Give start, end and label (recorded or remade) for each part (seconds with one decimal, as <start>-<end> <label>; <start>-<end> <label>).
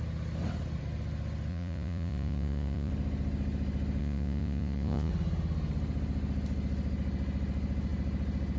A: 0.0-1.5 recorded; 1.5-2.9 remade; 2.9-4.0 recorded; 4.0-5.1 remade; 5.1-8.6 recorded